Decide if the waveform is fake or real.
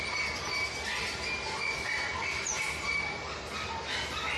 real